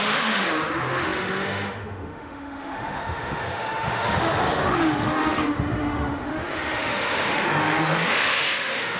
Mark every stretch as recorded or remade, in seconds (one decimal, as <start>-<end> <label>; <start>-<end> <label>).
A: 0.0-9.0 remade